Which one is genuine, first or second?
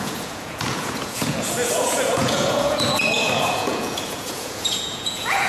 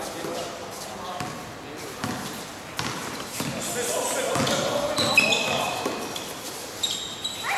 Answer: second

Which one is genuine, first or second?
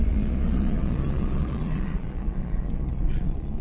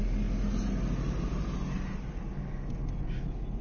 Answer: second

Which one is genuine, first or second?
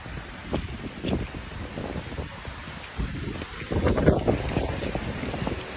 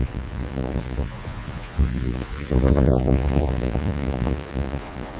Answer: first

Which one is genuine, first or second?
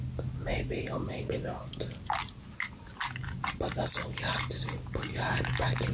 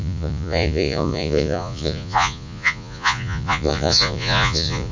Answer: first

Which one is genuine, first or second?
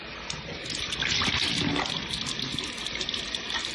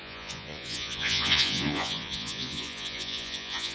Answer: first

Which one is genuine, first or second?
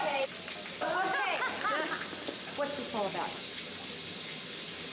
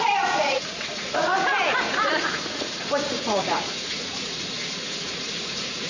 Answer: first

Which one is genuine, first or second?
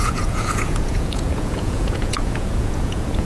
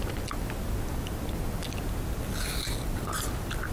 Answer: second